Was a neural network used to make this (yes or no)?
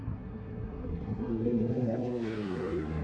yes